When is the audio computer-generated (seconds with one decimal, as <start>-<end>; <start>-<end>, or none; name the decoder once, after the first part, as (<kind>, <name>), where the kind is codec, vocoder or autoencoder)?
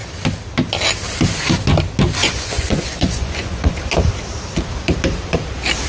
2.2-3.7 (vocoder, Vocos)